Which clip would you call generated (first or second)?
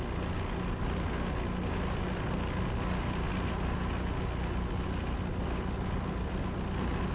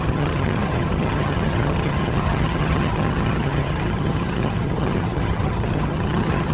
second